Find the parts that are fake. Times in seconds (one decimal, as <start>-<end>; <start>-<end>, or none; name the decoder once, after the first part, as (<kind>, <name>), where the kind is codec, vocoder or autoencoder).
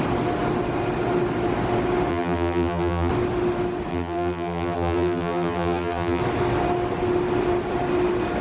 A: 2.1-3.1 (vocoder, BigVGAN v2); 3.9-6.2